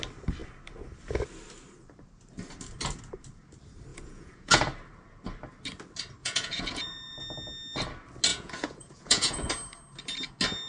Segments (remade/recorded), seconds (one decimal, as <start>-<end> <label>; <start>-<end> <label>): 0.0-3.9 recorded; 3.9-4.7 remade; 4.7-6.2 recorded; 6.2-7.2 remade; 7.2-8.3 recorded; 8.3-9.5 remade; 9.5-10.7 recorded

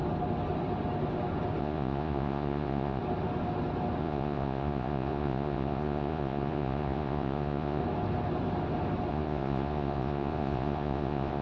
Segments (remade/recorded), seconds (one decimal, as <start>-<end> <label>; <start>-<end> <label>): 0.0-1.6 recorded; 1.6-3.0 remade; 3.0-4.0 recorded; 4.0-7.8 remade; 7.8-9.1 recorded; 9.1-11.4 remade

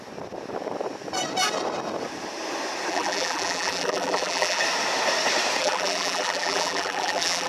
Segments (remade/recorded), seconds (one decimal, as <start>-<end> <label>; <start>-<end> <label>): 0.0-2.9 recorded; 2.9-4.6 remade; 4.6-5.6 recorded; 5.6-7.5 remade